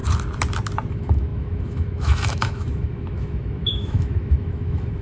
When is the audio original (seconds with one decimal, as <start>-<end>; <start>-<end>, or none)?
0.0-0.9